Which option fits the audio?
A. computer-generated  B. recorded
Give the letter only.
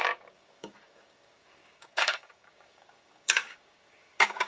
A